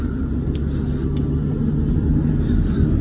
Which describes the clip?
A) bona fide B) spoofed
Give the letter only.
A